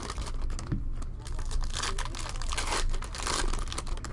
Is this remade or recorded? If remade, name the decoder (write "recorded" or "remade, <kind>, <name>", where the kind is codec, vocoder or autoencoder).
recorded